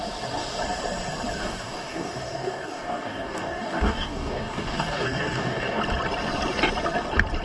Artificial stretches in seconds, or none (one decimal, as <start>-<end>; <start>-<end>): 1.4-5.8